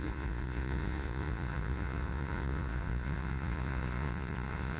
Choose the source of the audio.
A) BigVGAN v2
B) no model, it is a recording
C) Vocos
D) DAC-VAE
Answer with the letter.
C